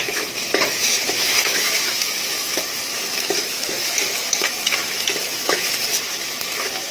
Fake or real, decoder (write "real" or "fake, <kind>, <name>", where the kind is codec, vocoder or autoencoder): fake, autoencoder, DAC-VAE